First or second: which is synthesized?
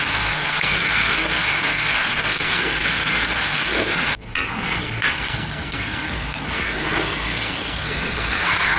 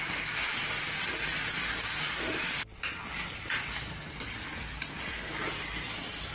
first